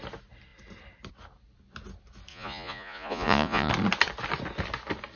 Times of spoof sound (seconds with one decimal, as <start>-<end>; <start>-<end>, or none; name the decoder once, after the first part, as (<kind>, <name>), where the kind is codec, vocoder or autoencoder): 2.3-3.7 (vocoder, Vocos)